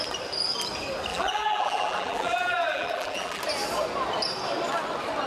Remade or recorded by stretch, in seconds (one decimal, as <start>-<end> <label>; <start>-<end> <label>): 0.0-1.1 recorded; 1.1-3.4 remade; 3.4-5.3 recorded